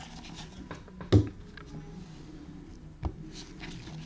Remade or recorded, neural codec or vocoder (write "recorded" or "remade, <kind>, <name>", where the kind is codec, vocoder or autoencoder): recorded